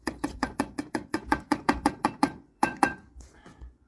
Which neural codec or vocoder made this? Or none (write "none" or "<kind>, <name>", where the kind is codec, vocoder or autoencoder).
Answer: vocoder, Vocos